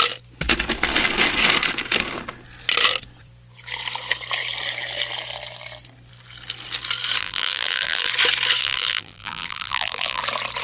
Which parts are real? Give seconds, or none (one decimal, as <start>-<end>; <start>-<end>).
0.0-7.2; 8.1-8.6; 10.2-10.6